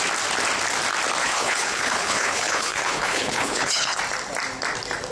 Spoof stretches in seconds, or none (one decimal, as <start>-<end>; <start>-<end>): 1.2-4.0